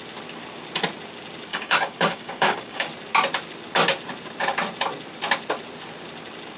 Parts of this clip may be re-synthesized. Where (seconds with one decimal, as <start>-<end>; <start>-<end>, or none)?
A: 1.5-2.9